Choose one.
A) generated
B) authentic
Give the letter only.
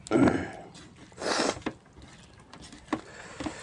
B